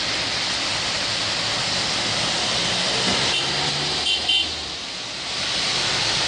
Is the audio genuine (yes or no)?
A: yes